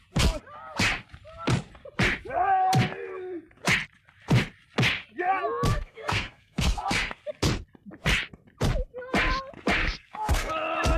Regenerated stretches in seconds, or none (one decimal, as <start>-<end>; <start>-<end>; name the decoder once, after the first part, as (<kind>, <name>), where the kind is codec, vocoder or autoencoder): 5.7-7.2 (codec, SNAC); 9.8-10.5